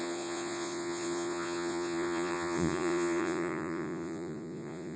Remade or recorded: remade